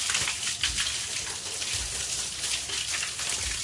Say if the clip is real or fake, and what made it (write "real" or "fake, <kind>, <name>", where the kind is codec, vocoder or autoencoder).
real